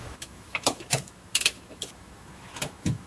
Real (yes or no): no